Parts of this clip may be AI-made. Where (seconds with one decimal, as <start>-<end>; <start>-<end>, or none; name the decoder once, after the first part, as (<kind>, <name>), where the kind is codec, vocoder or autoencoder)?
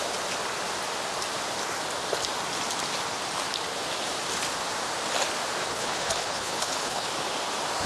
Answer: 5.6-7.1 (codec, HILCodec)